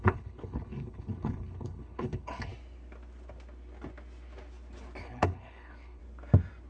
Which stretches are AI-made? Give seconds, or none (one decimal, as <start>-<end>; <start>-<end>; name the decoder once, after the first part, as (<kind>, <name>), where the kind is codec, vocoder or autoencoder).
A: 0.0-2.5 (codec, HILCodec); 5.0-6.0